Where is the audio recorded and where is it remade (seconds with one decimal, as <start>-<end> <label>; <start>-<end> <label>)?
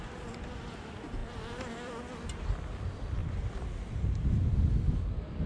0.0-1.2 recorded; 1.2-1.9 remade; 1.9-3.2 recorded; 3.2-4.9 remade; 4.9-5.5 recorded